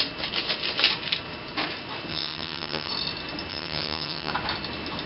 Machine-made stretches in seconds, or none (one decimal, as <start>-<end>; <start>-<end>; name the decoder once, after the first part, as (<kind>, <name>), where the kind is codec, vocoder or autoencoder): 2.1-2.9 (vocoder, HiFi-GAN); 3.5-4.3